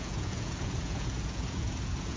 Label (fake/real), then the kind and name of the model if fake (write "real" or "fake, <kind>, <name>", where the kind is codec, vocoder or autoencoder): fake, vocoder, Vocos